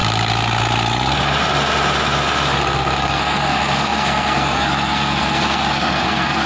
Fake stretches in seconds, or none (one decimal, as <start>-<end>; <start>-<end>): 2.6-6.5